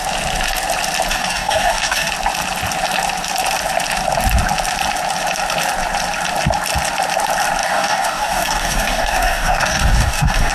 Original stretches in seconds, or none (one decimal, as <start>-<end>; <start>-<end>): 0.0-1.1; 2.1-7.6